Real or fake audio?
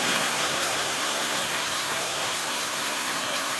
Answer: fake